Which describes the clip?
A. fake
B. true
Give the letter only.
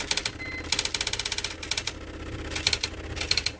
B